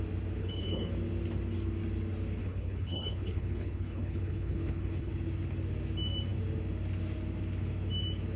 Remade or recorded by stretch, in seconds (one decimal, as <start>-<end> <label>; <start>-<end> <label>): 0.0-0.4 recorded; 0.4-0.9 remade; 0.9-2.4 recorded; 2.4-5.1 remade; 5.1-8.4 recorded